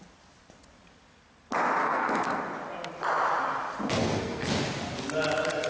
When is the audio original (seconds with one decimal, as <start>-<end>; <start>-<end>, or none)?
0.0-1.8; 2.4-4.0; 4.5-5.7